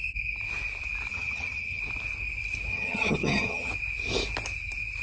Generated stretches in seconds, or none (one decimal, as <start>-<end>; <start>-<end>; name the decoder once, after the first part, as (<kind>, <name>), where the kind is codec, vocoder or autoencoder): 1.1-1.8 (vocoder, HiFi-GAN); 2.7-3.7